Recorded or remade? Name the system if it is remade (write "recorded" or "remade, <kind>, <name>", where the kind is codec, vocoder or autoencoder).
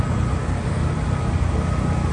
recorded